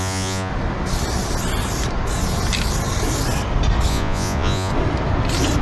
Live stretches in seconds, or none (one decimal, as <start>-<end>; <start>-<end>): 0.5-3.9; 4.7-5.6